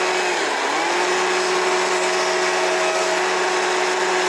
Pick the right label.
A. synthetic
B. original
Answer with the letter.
B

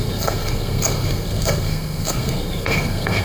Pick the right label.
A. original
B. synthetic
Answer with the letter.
B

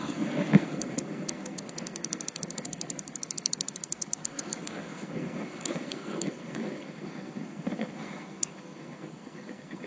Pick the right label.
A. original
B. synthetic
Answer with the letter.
B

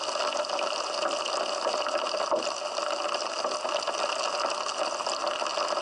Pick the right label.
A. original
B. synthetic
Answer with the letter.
A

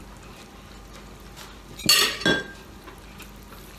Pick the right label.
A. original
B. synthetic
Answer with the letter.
A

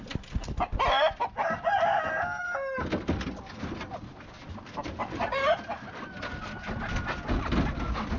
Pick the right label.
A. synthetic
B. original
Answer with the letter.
B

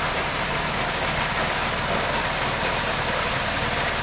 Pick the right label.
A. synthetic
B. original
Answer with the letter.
B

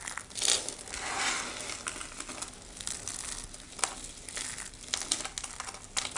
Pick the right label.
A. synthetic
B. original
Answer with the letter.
B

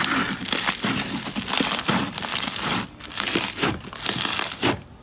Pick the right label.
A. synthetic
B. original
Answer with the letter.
B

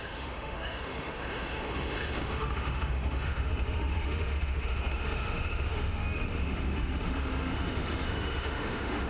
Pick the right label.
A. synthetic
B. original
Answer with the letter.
A